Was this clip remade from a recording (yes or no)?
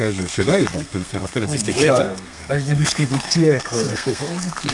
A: yes